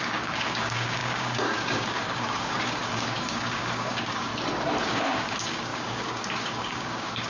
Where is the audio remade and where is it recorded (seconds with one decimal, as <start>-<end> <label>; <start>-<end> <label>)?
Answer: 0.0-4.3 remade; 4.3-4.8 recorded; 4.8-7.3 remade